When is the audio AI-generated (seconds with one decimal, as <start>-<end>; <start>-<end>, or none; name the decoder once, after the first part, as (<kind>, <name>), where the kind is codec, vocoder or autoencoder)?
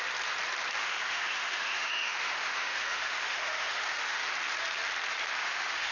0.8-4.3 (autoencoder, DAC-VAE); 5.4-5.9